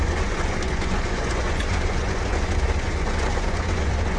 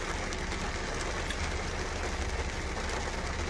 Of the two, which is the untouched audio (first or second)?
second